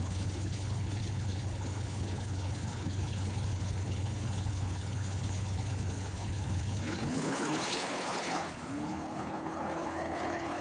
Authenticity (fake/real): fake